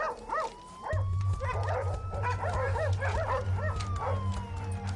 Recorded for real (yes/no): yes